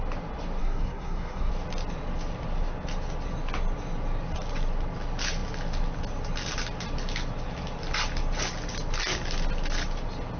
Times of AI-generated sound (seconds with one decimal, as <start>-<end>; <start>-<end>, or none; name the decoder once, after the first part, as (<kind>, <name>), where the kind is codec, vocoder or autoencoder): 0.6-1.5 (codec, SNAC)